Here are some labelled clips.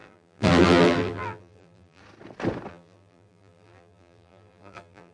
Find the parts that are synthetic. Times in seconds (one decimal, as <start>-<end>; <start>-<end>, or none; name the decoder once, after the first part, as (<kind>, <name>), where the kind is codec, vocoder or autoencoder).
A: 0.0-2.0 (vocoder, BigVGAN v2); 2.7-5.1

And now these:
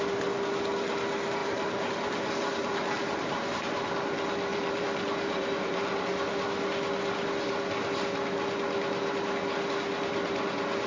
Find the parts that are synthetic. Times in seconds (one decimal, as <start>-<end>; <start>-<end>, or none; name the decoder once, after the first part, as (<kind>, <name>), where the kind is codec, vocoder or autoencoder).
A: 1.4-2.3 (vocoder, BigVGAN v2); 4.5-6.1

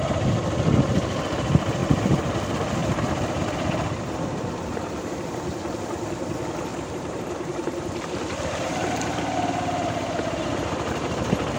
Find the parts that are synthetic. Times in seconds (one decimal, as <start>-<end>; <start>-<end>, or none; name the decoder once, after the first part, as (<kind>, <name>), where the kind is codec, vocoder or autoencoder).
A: 2.8-3.4 (vocoder, BigVGAN v2); 6.7-9.2

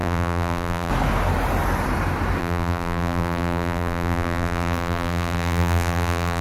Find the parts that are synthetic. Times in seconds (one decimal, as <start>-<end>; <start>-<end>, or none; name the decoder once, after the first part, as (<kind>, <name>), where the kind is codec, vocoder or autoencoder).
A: 0.0-0.9 (vocoder, BigVGAN v2); 2.4-6.4